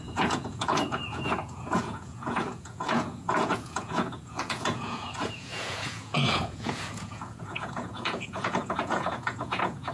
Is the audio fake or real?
fake